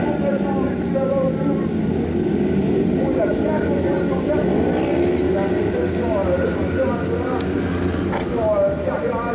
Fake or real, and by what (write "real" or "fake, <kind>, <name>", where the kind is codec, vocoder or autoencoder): real